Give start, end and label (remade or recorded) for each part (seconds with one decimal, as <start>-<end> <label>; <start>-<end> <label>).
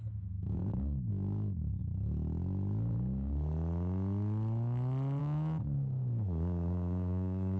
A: 0.0-1.8 remade; 1.8-5.2 recorded; 5.2-7.6 remade